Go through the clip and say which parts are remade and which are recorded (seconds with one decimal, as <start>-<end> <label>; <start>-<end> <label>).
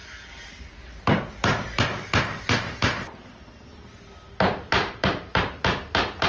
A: 0.0-3.3 remade; 3.3-4.8 recorded; 4.8-5.6 remade; 5.6-6.3 recorded